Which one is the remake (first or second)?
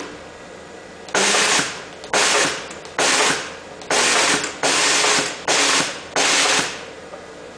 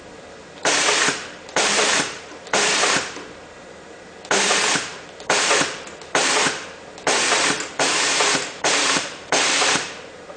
second